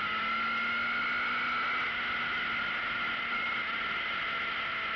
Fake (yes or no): no